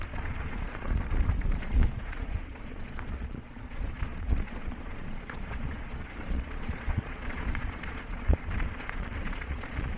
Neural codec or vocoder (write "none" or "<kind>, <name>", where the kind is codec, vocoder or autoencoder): vocoder, Vocos